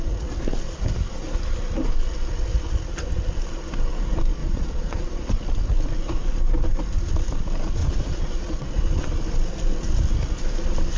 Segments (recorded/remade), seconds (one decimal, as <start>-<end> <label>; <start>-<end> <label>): 0.0-4.4 recorded; 4.4-5.4 remade; 5.4-7.8 recorded; 7.8-9.1 remade; 9.1-11.0 recorded